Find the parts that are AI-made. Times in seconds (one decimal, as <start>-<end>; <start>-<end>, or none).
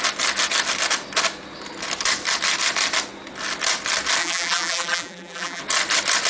4.2-5.6